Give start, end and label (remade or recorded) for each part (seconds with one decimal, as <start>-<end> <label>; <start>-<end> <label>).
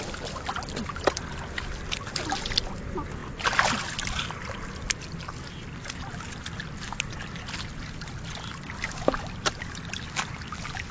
0.0-10.9 recorded